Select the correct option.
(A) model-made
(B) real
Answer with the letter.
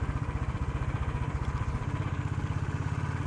B